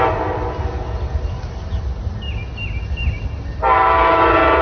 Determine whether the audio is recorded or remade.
recorded